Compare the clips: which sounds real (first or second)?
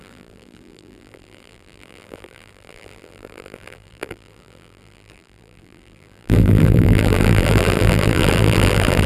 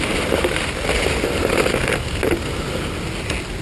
second